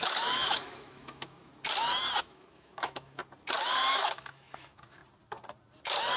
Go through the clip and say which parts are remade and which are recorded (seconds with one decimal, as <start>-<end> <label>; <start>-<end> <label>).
0.0-1.5 remade; 1.5-2.2 recorded; 2.2-3.2 remade; 3.2-3.9 recorded; 3.9-5.0 remade; 5.0-6.2 recorded